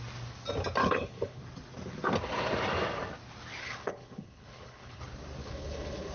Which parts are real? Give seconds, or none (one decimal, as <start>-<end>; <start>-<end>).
0.0-0.8; 1.4-3.6; 5.0-5.4